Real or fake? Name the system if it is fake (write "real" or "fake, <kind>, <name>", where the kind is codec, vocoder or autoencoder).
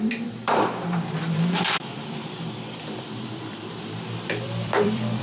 fake, vocoder, BigVGAN v2